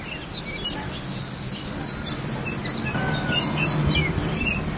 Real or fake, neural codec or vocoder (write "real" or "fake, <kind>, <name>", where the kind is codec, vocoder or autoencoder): real